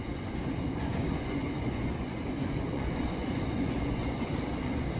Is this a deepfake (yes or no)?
yes